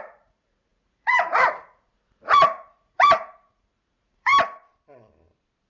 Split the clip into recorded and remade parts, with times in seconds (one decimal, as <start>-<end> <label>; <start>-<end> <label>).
0.0-4.3 remade; 4.3-5.7 recorded